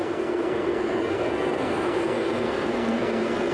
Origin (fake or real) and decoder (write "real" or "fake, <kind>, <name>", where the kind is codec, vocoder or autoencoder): fake, codec, SNAC